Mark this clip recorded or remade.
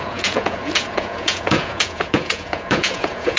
remade